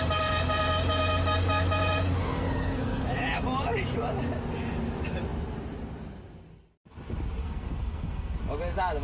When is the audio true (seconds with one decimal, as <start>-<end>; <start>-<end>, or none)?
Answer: 0.0-2.2; 3.0-7.4; 8.4-9.0